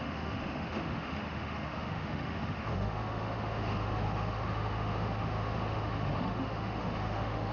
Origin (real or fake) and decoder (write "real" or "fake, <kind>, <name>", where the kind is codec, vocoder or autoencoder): fake, autoencoder, DAC-VAE